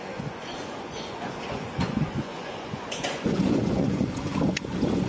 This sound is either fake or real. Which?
fake